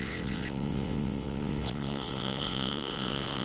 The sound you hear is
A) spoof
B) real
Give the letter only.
A